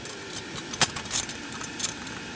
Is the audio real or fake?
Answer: real